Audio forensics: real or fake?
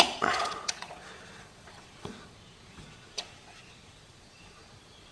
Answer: fake